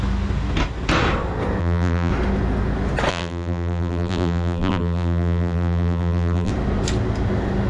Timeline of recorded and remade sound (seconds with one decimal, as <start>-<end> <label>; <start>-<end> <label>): 0.0-1.6 recorded; 1.6-2.1 remade; 2.1-3.1 recorded; 3.1-6.5 remade; 6.5-7.7 recorded